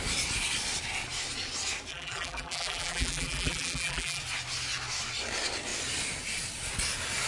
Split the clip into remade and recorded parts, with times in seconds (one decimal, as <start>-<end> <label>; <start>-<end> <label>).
0.0-1.9 recorded; 1.9-4.2 remade; 4.2-7.3 recorded